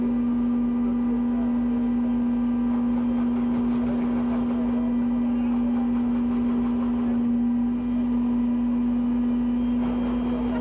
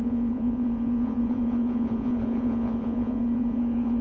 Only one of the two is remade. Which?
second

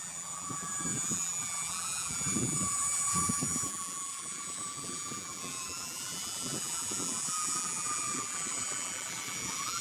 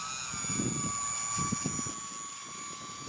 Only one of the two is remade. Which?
first